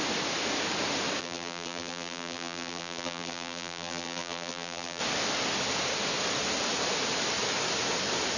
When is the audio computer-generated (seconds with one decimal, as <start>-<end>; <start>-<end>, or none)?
1.2-5.0

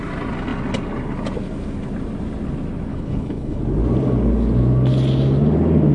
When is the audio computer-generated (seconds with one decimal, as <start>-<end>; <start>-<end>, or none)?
2.9-3.6

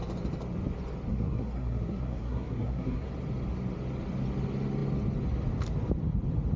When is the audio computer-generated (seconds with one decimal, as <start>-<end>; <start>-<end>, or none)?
1.1-3.1